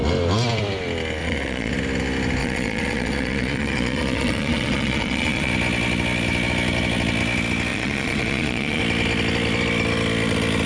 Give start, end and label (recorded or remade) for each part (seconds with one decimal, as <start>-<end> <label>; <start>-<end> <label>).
0.0-1.2 recorded; 1.2-1.7 remade; 1.7-2.4 recorded; 2.4-5.5 remade; 5.5-7.7 recorded; 7.7-8.8 remade; 8.8-10.7 recorded